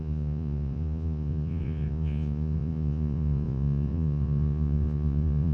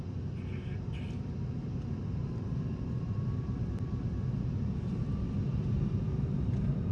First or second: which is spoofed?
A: first